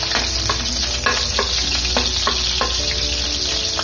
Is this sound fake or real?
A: real